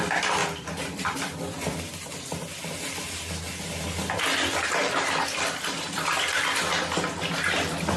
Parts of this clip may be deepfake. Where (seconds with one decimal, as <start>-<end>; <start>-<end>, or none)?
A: 0.4-2.5